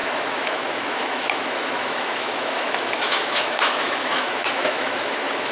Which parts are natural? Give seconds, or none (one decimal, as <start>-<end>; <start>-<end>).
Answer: none